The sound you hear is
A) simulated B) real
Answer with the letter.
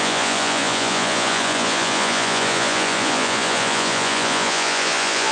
A